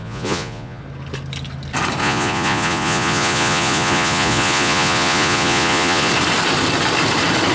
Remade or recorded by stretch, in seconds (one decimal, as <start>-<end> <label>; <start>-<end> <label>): 0.0-0.8 remade; 0.8-2.0 recorded; 2.0-6.1 remade; 6.1-7.5 recorded